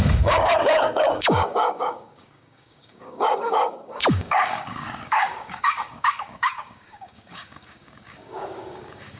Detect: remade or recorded remade